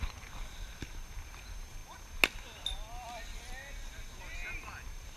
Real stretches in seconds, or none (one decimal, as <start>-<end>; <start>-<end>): 0.0-5.2